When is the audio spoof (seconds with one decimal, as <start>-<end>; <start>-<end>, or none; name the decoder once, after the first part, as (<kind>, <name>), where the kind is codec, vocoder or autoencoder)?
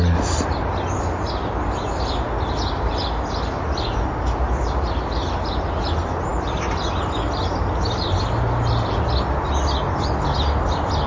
none